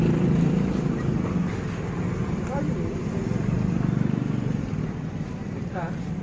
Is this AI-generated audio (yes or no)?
no